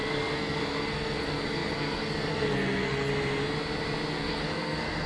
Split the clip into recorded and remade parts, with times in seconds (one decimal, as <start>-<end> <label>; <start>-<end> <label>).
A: 0.0-3.1 remade; 3.1-4.1 recorded; 4.1-5.1 remade